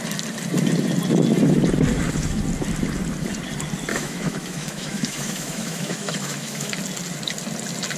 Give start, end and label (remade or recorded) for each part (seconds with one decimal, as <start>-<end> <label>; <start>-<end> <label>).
0.0-3.9 recorded; 3.9-6.7 remade; 6.7-8.0 recorded